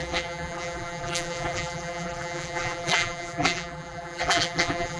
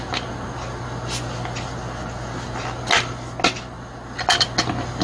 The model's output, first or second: first